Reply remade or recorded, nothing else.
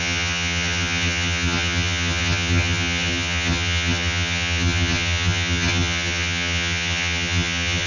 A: remade